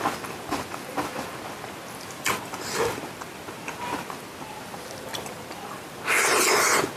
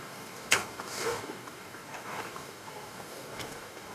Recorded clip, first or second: first